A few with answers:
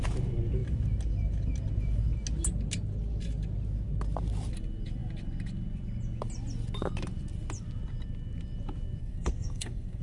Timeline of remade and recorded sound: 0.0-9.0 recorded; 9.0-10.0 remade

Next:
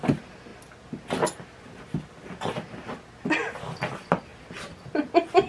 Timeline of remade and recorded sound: 0.0-5.5 recorded

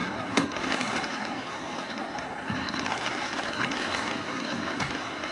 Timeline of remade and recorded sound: 0.0-5.3 remade

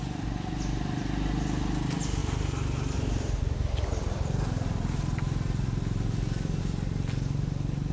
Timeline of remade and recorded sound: 0.0-7.9 recorded

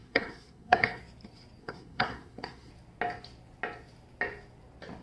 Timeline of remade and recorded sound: 0.0-1.0 remade; 1.0-1.6 recorded; 1.6-2.7 remade; 2.7-5.0 recorded

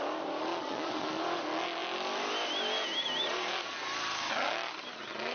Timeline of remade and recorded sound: 0.0-0.5 recorded; 0.5-1.2 remade; 1.2-5.3 recorded

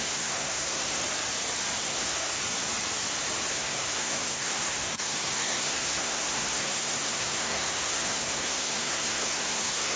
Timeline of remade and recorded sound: 0.0-1.0 remade; 1.0-1.8 recorded; 1.8-2.4 remade; 2.4-3.5 recorded; 3.5-10.0 remade